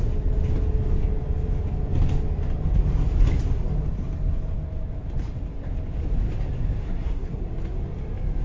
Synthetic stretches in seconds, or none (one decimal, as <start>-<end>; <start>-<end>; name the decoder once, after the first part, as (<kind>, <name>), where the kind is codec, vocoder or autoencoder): 6.8-7.4 (codec, SNAC)